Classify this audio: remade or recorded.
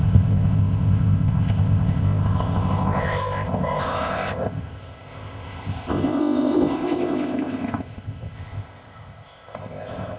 remade